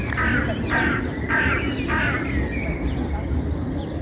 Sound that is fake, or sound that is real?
real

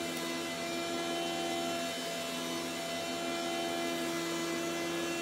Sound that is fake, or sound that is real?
real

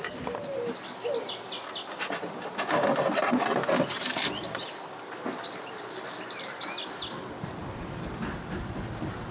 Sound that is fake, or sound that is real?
real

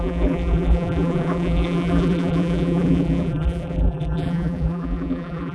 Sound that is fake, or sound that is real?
fake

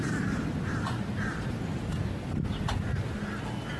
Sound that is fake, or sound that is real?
real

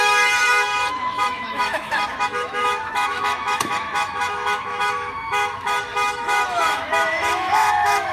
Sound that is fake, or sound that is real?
fake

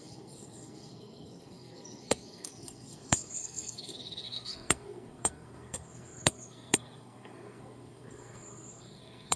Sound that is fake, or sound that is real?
fake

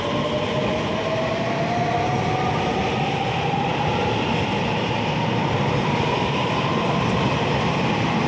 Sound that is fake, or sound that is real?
real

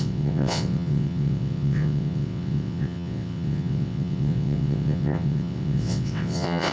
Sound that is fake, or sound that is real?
fake